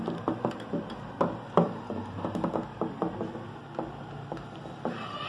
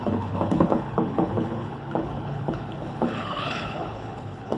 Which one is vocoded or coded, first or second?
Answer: second